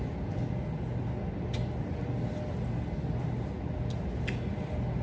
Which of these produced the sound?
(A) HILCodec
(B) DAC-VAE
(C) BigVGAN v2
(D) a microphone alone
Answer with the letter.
D